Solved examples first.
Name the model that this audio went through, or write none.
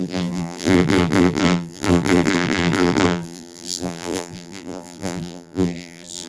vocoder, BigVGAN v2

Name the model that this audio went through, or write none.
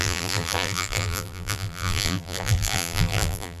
vocoder, BigVGAN v2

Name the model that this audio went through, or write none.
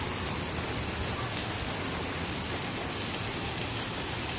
none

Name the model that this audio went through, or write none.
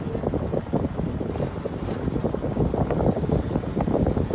none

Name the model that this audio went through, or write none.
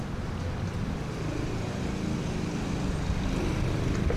none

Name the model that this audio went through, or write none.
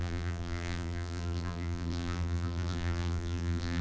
vocoder, BigVGAN v2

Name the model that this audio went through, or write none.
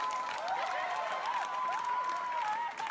none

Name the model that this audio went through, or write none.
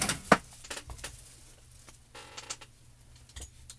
none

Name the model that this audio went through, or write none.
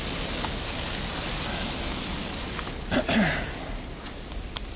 none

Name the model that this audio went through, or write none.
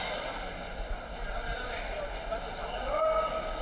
none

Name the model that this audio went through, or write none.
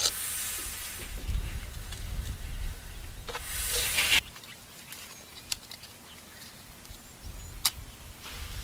none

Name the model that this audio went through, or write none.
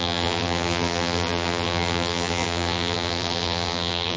vocoder, BigVGAN v2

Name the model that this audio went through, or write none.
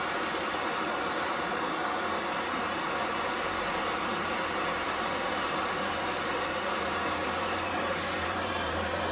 vocoder, BigVGAN v2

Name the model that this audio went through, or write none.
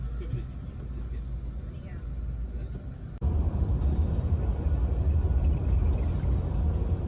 none